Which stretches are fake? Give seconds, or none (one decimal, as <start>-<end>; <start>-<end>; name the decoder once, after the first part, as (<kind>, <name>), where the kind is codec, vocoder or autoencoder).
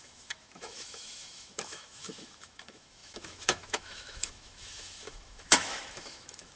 0.0-6.6 (autoencoder, DAC-VAE)